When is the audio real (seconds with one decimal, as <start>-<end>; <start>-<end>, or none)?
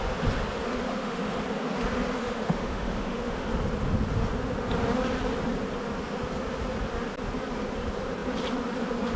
0.0-0.9; 1.4-2.2; 3.5-9.2